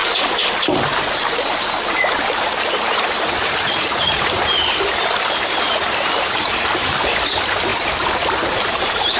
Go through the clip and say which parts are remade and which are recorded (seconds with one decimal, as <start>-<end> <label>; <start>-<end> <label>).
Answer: 0.0-2.4 recorded; 2.4-9.2 remade